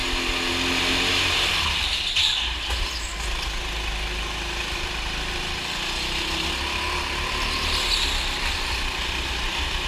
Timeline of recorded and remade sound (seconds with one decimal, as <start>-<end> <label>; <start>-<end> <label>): 0.0-9.9 recorded